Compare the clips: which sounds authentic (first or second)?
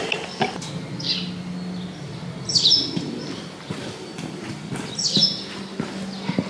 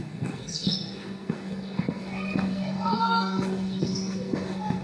first